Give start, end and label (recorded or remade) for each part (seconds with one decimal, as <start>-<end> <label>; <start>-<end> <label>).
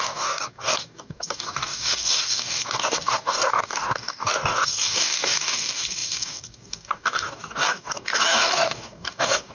0.0-9.5 remade